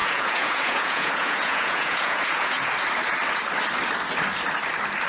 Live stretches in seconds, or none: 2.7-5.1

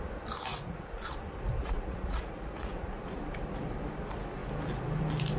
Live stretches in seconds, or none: 0.0-0.5; 1.1-1.6; 3.2-5.4

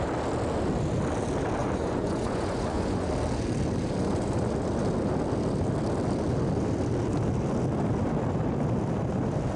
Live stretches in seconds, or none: 0.0-1.6; 3.1-9.6

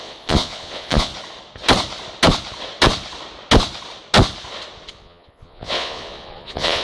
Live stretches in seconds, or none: 1.1-4.9

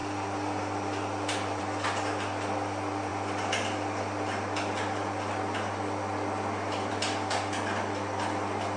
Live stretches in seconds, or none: 0.0-8.8